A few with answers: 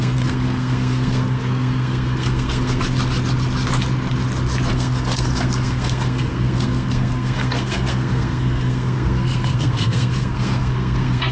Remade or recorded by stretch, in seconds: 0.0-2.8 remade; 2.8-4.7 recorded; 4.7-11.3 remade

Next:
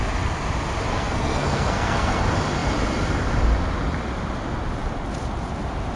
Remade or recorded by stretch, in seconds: 0.0-0.9 recorded; 0.9-2.2 remade; 2.2-6.0 recorded

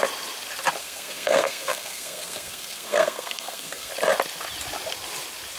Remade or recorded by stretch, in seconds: 0.0-0.8 recorded; 0.8-3.9 remade; 3.9-5.6 recorded

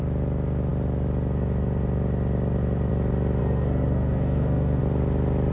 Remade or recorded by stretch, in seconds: 0.0-3.4 recorded; 3.4-4.8 remade; 4.8-5.5 recorded

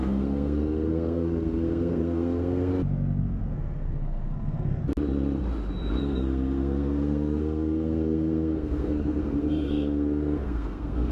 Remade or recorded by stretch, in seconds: 0.0-2.7 remade; 2.7-3.2 recorded; 3.2-4.8 remade; 4.8-6.0 recorded; 6.0-11.1 remade

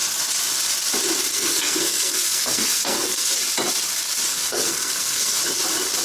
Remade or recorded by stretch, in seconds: 0.0-1.3 recorded; 1.3-3.4 remade; 3.4-4.3 recorded; 4.3-5.4 remade; 5.4-6.0 recorded